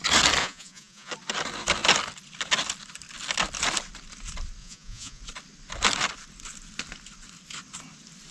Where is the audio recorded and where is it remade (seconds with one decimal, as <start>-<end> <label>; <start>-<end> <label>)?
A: 0.0-0.4 recorded; 0.4-1.1 remade; 1.1-4.6 recorded; 4.6-5.2 remade; 5.2-8.3 recorded